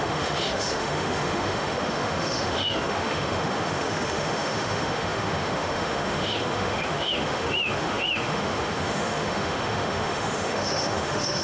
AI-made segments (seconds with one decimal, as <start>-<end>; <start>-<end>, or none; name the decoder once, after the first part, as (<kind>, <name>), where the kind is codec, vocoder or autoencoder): 0.0-11.4 (autoencoder, DAC-VAE)